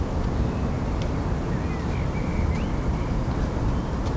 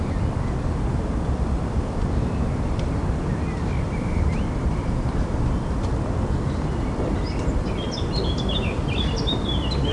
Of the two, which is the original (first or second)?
first